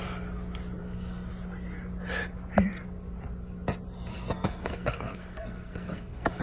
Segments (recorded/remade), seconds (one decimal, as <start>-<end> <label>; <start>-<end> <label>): 0.0-0.8 recorded; 0.8-1.3 remade; 1.3-4.1 recorded; 4.1-6.4 remade